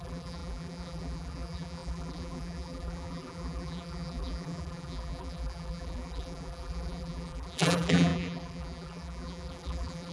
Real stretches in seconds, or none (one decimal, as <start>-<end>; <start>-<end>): none